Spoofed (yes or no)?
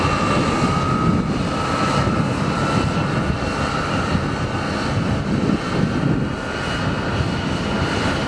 no